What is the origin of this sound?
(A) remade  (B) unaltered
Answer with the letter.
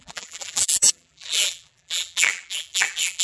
A